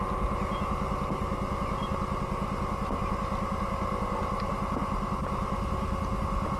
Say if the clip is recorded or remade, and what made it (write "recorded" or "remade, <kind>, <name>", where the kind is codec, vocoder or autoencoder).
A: recorded